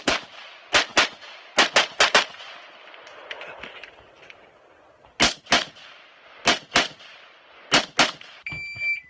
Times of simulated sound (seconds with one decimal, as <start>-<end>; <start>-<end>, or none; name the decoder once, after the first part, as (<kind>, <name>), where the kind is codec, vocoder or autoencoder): none